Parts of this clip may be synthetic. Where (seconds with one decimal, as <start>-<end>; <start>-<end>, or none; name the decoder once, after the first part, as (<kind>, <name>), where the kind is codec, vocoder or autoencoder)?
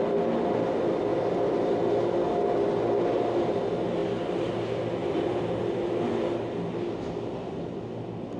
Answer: 1.1-1.9 (vocoder, BigVGAN v2); 4.0-4.5; 5.0-5.6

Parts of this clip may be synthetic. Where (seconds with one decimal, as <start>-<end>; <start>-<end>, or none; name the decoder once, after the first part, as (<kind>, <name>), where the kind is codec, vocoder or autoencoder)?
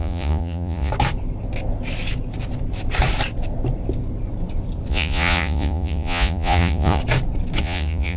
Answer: 0.0-0.9 (vocoder, Vocos); 4.9-7.0; 7.6-8.2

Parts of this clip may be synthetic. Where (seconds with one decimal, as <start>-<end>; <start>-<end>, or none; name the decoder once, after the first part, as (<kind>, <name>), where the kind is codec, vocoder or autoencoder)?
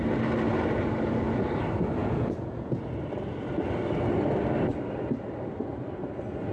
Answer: 2.0-2.8 (vocoder, Vocos)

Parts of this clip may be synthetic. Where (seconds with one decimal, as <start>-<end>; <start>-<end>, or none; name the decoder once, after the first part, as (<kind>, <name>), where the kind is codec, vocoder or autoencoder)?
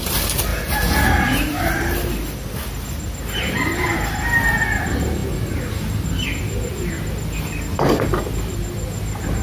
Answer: 0.5-1.8 (vocoder, BigVGAN v2)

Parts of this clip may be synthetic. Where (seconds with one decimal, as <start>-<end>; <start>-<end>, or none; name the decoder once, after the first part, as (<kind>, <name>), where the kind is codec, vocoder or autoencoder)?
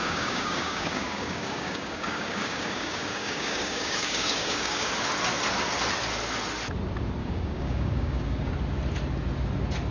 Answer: 0.0-4.9 (codec, DAC); 7.2-8.5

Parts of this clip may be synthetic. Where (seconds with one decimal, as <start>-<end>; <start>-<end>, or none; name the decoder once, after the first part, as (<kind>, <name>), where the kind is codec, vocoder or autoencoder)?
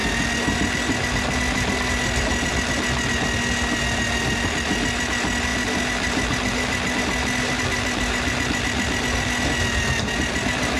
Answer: none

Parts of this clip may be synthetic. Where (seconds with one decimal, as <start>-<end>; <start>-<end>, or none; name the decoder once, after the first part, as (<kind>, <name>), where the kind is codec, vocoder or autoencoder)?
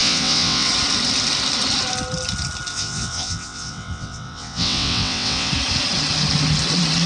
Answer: 0.0-0.7 (vocoder, WaveNeXt); 2.7-5.5